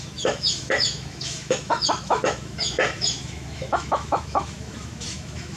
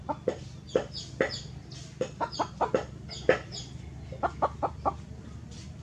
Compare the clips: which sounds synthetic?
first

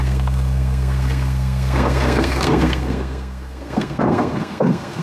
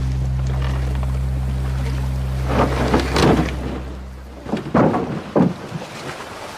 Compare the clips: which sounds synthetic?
first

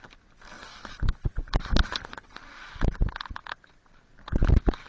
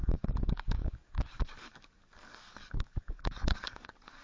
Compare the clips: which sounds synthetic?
second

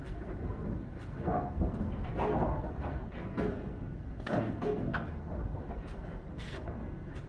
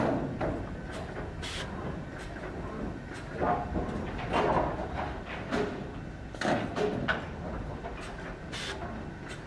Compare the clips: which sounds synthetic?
first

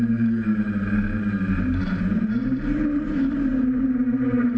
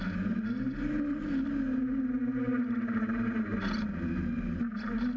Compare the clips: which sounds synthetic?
first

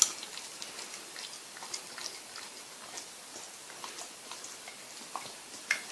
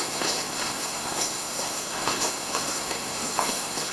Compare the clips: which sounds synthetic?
second